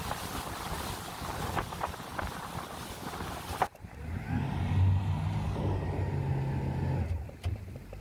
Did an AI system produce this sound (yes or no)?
no